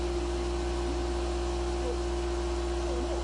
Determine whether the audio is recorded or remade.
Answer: recorded